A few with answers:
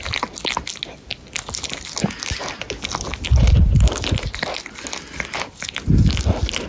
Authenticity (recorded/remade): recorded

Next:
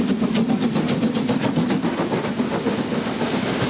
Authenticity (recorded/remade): recorded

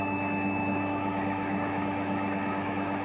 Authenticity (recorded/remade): remade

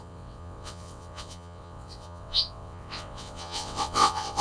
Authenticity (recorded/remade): remade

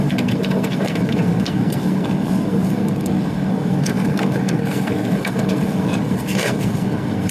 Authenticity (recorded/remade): remade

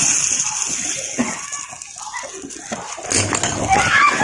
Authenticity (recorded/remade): recorded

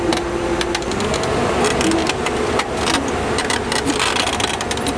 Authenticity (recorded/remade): recorded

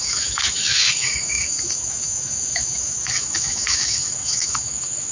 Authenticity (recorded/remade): remade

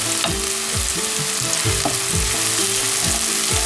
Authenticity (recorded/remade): recorded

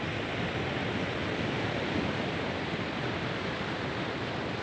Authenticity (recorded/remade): recorded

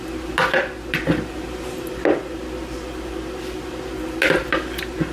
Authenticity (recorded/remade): recorded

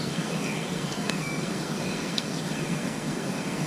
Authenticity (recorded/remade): remade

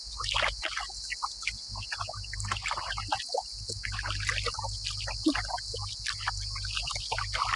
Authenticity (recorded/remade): recorded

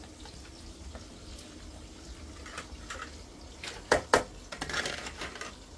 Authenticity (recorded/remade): recorded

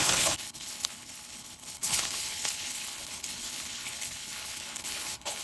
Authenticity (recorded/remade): remade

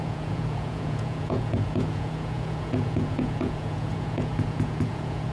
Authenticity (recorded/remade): remade